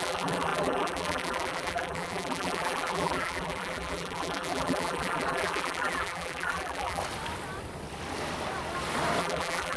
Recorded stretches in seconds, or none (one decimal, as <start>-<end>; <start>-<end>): 7.0-9.2

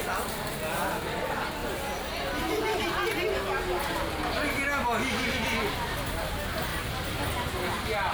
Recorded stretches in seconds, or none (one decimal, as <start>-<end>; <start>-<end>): 0.0-6.7; 7.3-8.1

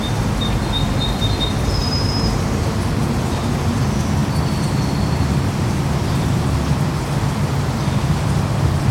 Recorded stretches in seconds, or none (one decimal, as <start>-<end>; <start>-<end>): 0.0-1.8; 3.0-8.9

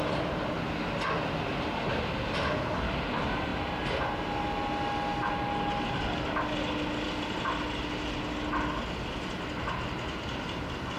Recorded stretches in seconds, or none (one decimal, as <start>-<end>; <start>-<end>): 0.0-11.0

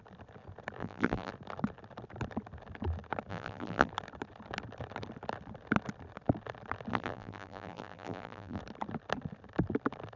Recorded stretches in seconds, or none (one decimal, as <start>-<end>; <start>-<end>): 0.0-0.8; 1.3-3.3; 3.9-6.9; 8.6-10.2